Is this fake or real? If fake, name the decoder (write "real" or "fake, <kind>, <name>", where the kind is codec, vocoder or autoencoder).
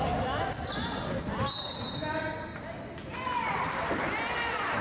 real